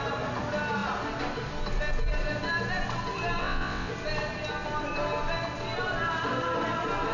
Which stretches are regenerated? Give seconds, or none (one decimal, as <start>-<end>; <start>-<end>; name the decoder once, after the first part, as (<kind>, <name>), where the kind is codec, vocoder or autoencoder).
3.4-3.9 (vocoder, WaveNeXt)